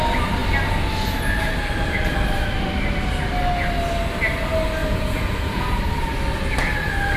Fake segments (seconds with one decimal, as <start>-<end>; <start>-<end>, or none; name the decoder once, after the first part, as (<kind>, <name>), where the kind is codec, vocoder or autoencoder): 4.8-5.8 (vocoder, Vocos)